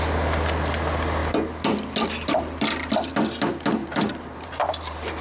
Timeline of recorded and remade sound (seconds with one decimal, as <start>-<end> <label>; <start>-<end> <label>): 0.0-3.8 recorded; 3.8-5.2 remade